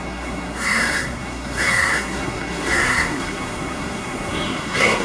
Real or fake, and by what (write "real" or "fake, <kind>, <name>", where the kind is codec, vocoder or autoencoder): fake, codec, SNAC